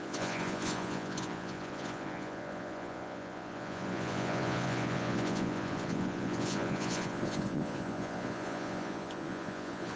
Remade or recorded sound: remade